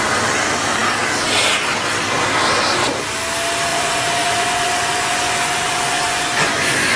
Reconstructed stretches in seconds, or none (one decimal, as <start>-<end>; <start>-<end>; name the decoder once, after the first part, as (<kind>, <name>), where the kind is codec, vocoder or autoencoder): 3.7-7.0 (vocoder, Vocos)